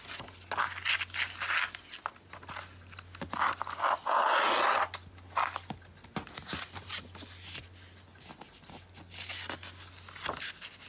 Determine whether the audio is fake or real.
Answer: real